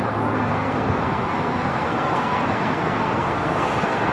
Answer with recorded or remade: remade